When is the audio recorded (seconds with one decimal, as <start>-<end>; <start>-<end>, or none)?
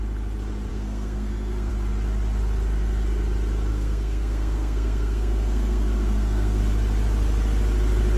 0.0-0.7; 1.7-3.7; 6.6-8.2